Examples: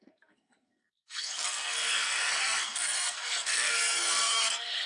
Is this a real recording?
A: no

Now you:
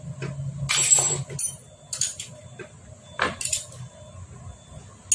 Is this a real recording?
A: yes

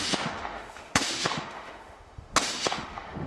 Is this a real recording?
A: no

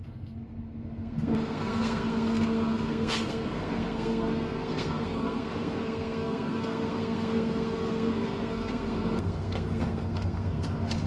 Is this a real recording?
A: no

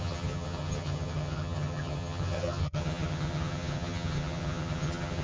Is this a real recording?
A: no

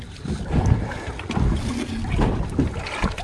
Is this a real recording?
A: yes